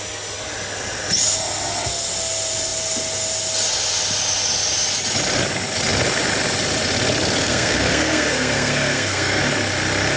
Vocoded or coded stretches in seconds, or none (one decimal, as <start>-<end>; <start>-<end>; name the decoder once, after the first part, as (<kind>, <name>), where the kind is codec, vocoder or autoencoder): 7.4-9.4 (codec, SNAC)